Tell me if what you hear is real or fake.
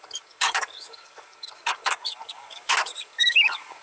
fake